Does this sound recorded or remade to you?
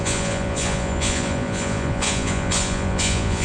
remade